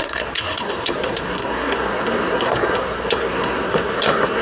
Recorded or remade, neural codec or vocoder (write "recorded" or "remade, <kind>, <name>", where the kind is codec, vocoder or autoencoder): remade, codec, SNAC